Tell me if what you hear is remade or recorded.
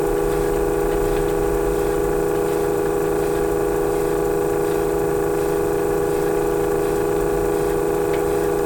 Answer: recorded